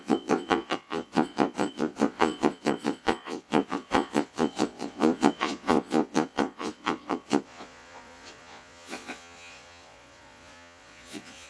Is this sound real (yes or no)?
no